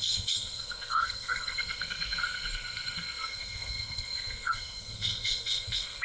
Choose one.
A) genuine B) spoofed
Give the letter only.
B